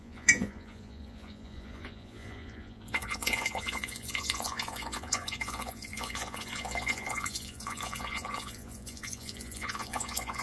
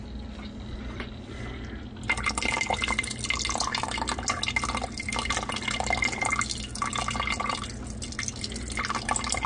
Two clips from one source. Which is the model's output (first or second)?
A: first